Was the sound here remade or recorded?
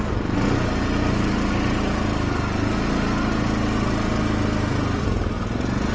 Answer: recorded